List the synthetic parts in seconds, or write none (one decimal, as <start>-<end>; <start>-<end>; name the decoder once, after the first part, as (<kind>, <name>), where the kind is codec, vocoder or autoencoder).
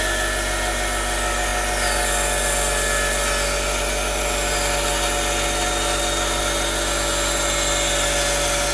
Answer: none